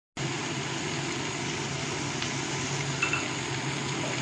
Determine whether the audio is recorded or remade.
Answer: recorded